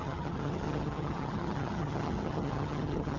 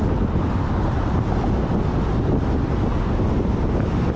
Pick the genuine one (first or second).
second